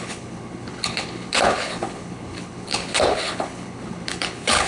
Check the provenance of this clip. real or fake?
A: fake